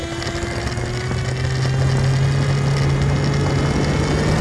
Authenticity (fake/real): real